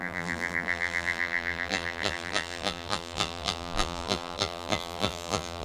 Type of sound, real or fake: fake